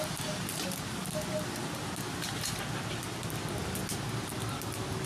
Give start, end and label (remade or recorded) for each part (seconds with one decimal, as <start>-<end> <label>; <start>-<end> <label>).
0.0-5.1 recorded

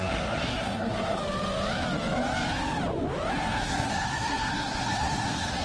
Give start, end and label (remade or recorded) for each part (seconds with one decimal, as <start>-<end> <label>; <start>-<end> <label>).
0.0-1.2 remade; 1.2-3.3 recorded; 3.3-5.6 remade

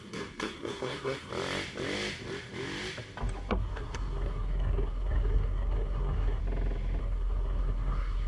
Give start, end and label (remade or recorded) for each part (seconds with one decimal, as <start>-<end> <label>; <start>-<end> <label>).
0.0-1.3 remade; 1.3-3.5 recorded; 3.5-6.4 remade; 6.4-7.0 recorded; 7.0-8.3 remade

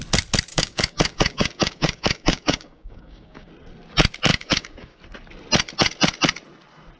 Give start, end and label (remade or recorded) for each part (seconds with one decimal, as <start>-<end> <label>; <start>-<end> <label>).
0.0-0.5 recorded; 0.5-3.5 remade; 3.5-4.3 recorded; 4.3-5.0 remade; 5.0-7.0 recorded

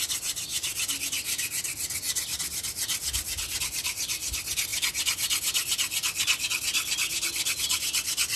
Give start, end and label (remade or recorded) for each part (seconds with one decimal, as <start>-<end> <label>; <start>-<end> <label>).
0.0-8.4 recorded

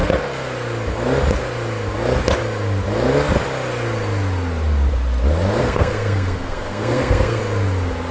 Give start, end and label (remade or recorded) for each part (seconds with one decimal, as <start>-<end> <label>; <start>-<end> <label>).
0.0-5.6 recorded; 5.6-7.4 remade; 7.4-8.1 recorded